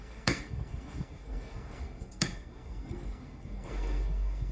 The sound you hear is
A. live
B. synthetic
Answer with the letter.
B